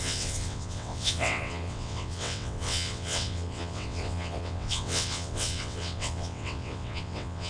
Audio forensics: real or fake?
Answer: fake